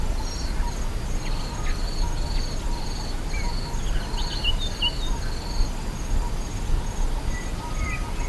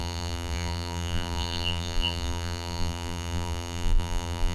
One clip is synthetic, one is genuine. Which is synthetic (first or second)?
second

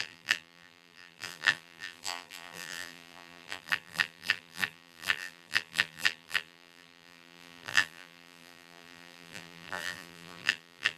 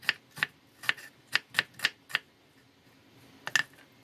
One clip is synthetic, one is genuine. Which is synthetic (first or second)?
first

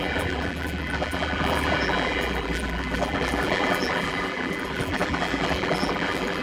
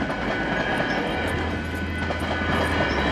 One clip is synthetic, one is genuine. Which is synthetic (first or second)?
first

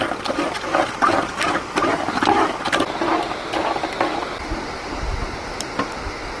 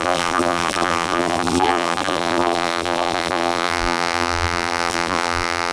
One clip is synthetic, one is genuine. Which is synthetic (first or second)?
second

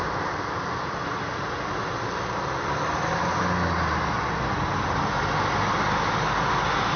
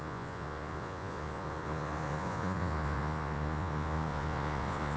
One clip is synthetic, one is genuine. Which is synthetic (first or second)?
second